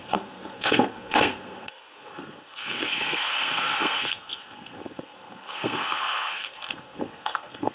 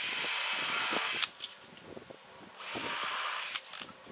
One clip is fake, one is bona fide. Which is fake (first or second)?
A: first